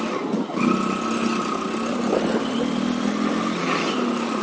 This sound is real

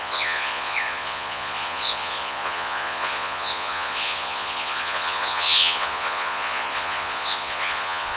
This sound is fake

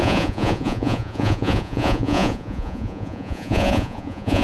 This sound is fake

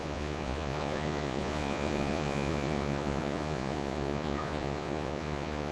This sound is fake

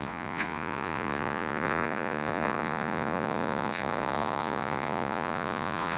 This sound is fake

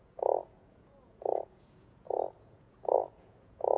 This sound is fake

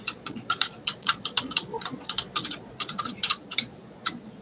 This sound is fake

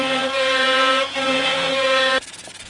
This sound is fake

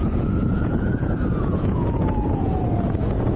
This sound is fake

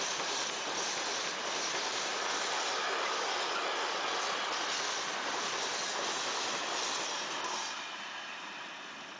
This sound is real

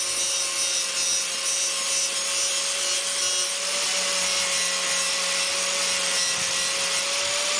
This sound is real